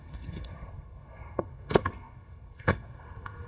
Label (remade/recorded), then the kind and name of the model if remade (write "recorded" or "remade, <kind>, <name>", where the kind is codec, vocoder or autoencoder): remade, codec, SNAC